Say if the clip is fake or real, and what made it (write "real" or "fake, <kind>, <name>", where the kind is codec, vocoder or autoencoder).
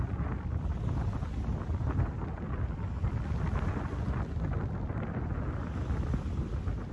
real